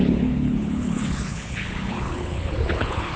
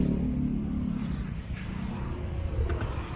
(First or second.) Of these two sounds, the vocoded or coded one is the first